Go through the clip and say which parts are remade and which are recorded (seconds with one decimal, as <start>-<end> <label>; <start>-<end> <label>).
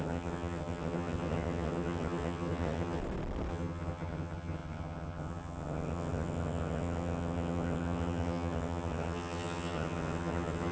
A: 0.0-3.0 remade; 3.0-3.5 recorded; 3.5-10.7 remade